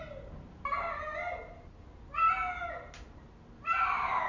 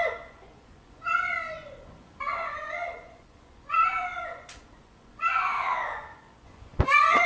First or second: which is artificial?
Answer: second